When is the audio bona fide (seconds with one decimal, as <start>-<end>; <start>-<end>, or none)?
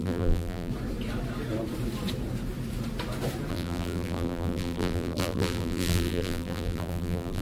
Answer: 0.7-3.5